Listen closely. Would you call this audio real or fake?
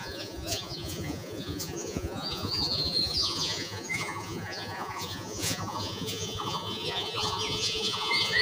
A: fake